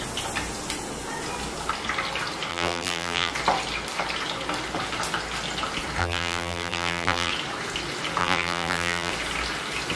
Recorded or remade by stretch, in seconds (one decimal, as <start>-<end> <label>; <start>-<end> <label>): 0.0-2.5 recorded; 2.5-3.3 remade; 3.3-6.0 recorded; 6.0-7.3 remade; 7.3-8.2 recorded; 8.2-9.1 remade; 9.1-10.0 recorded